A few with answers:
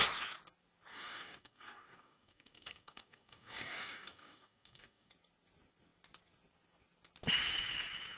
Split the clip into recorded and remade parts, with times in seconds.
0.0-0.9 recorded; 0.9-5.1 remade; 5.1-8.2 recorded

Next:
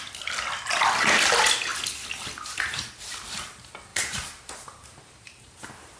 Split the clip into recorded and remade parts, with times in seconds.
0.0-3.9 recorded; 3.9-6.0 remade

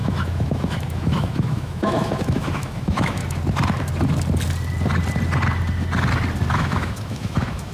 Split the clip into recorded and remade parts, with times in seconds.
0.0-3.2 remade; 3.2-6.5 recorded; 6.5-7.7 remade

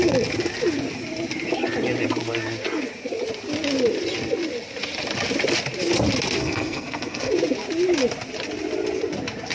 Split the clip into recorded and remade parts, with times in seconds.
0.0-6.4 recorded; 6.4-7.3 remade; 7.3-9.5 recorded